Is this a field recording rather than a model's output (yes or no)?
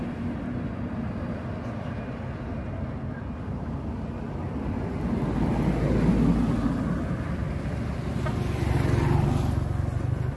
yes